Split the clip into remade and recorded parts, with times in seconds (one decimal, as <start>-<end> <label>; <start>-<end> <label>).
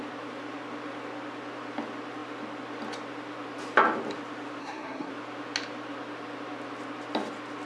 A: 0.0-4.6 recorded; 4.6-5.1 remade; 5.1-7.7 recorded